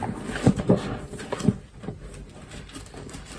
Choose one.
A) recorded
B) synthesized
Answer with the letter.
A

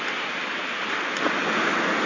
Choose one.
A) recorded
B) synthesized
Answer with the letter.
A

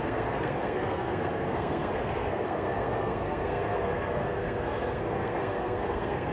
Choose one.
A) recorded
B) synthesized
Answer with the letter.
B